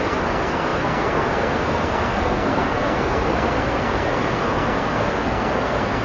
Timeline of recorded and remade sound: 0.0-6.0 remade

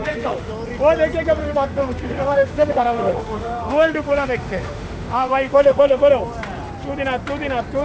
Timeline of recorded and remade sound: 0.0-0.5 remade; 0.5-1.4 recorded; 1.4-6.1 remade; 6.1-7.8 recorded

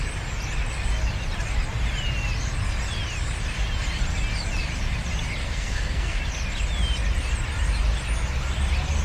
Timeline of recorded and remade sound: 0.0-5.4 recorded; 5.4-6.2 remade; 6.2-9.0 recorded

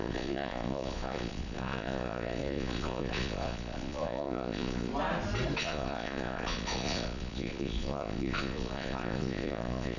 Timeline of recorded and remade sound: 0.0-4.9 remade; 4.9-5.6 recorded; 5.6-10.0 remade

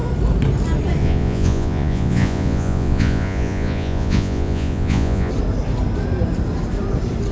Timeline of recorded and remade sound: 0.0-1.0 recorded; 1.0-5.3 remade; 5.3-7.3 recorded

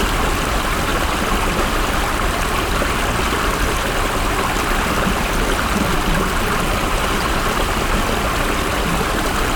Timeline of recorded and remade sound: 0.0-0.9 recorded; 0.9-3.0 remade; 3.0-9.6 recorded